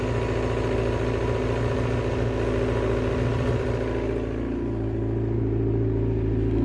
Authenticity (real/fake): real